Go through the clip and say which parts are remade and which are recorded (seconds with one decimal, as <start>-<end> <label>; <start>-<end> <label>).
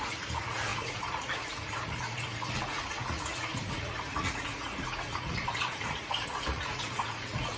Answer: 0.0-7.6 remade